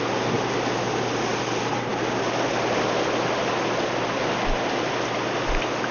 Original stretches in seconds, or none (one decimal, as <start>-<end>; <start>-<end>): 0.0-5.9